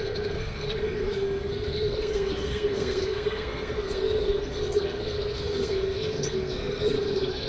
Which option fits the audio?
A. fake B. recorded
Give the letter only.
A